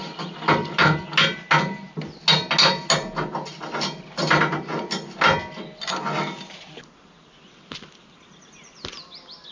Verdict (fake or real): real